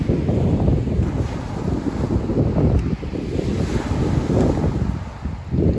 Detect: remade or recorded recorded